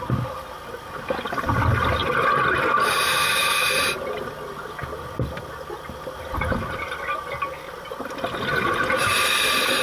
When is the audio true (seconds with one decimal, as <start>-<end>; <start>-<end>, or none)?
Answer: 0.0-9.8